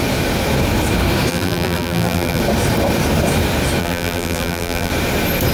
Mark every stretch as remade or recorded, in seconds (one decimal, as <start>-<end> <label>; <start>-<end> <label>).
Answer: 0.0-1.3 recorded; 1.3-2.4 remade; 2.4-3.8 recorded; 3.8-4.9 remade; 4.9-5.5 recorded